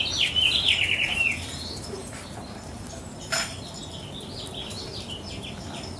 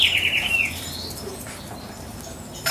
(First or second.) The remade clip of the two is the first